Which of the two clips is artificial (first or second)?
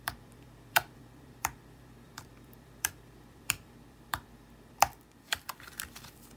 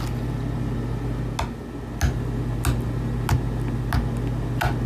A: first